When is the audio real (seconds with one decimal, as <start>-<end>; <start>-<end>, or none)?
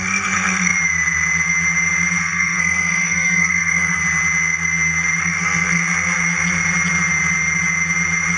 0.7-2.2; 4.0-5.2; 5.8-8.4